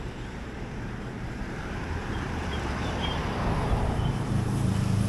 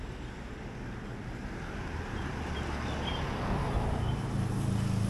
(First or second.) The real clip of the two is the second